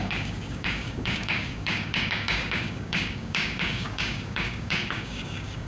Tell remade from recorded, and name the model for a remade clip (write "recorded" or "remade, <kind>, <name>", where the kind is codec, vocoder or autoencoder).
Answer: remade, codec, DAC